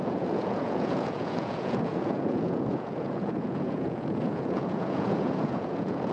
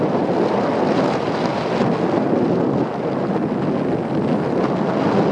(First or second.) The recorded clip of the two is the second